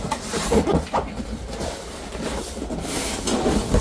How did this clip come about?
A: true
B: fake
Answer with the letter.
A